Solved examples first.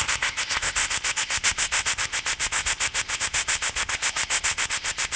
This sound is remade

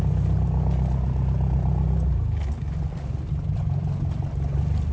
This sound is recorded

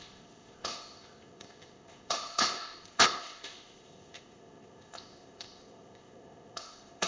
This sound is remade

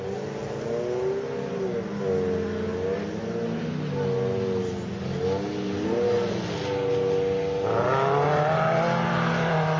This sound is recorded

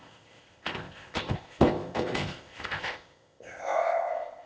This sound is remade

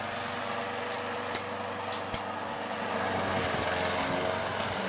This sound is recorded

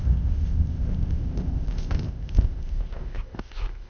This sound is remade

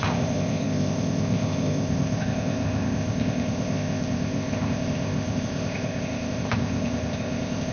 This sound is remade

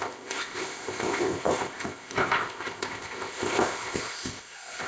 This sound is remade